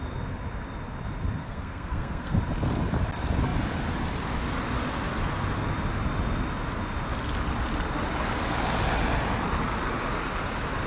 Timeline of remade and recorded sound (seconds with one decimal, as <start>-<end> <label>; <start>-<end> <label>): 0.0-1.4 recorded; 1.4-2.4 remade; 2.4-10.9 recorded

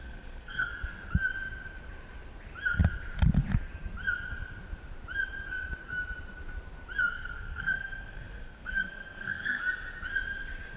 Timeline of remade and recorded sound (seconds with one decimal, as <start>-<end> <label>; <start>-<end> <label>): 0.0-0.7 remade; 0.7-7.0 recorded; 7.0-9.6 remade; 9.6-10.8 recorded

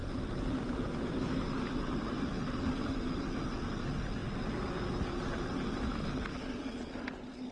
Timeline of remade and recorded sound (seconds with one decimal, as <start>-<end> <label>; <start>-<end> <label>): 0.0-7.5 recorded

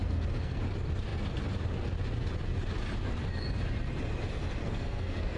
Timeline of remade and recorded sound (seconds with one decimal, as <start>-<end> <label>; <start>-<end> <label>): 0.0-0.6 remade; 0.6-4.6 recorded; 4.6-5.4 remade

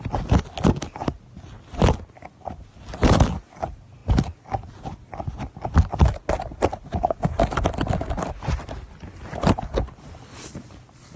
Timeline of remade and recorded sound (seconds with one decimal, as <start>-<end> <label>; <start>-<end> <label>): 0.0-11.2 recorded

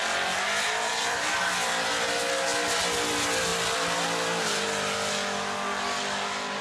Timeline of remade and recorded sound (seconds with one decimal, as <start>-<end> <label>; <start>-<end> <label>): 0.0-6.6 recorded

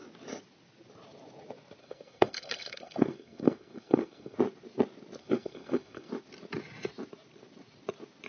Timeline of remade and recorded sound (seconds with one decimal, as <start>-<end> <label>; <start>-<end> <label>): 0.0-1.8 recorded; 1.8-4.4 remade; 4.4-5.2 recorded; 5.2-6.1 remade; 6.1-8.3 recorded